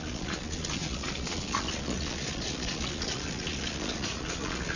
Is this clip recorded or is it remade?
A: remade